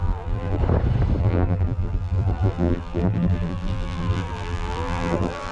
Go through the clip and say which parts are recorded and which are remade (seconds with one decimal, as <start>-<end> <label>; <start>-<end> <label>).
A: 0.0-0.6 remade; 0.6-1.2 recorded; 1.2-5.5 remade